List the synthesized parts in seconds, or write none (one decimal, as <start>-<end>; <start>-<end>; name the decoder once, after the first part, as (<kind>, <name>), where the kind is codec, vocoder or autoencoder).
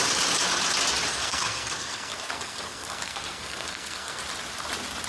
1.1-4.2 (codec, SNAC)